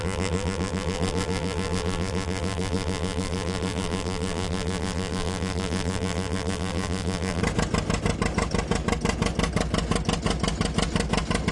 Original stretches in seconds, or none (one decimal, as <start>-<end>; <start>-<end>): 7.4-11.5